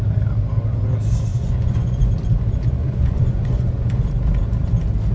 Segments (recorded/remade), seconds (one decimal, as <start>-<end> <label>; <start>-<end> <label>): 0.0-1.3 recorded; 1.3-2.1 remade; 2.1-2.8 recorded; 2.8-4.0 remade; 4.0-5.1 recorded